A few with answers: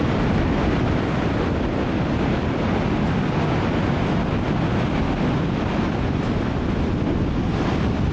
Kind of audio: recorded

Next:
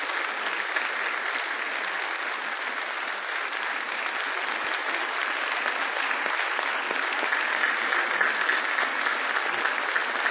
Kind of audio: recorded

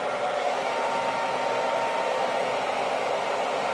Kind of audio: recorded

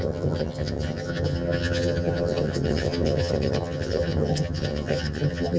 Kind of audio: remade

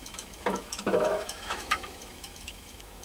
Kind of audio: remade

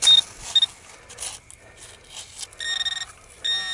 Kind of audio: recorded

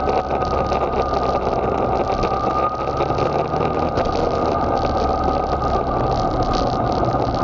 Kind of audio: recorded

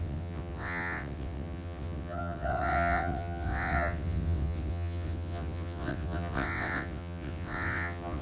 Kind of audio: remade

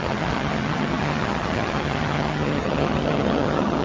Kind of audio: remade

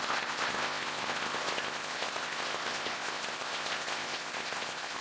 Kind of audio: remade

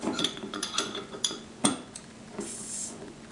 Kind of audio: remade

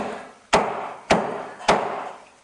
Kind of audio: remade